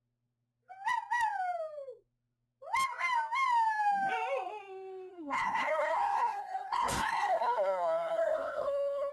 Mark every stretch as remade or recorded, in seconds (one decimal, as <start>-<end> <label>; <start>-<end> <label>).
0.0-5.1 recorded; 5.1-9.1 remade